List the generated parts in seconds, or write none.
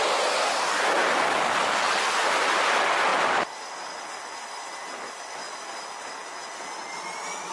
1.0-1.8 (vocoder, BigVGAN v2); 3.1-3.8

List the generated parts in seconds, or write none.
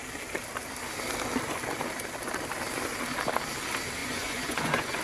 4.0-5.0 (vocoder, Vocos)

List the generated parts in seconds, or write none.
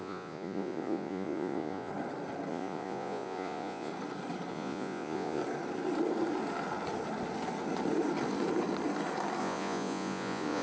0.0-1.9 (vocoder, Vocos); 2.5-3.9; 4.5-5.4; 9.4-10.6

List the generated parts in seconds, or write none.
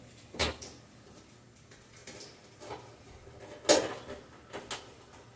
none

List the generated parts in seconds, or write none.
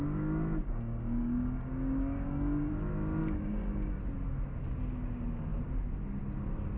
0.6-2.7 (codec, DAC); 3.2-4.0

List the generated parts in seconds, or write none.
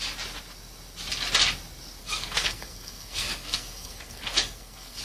2.0-5.0 (codec, SNAC)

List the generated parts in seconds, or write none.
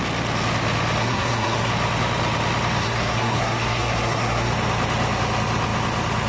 1.0-1.7 (codec, SNAC); 2.8-4.5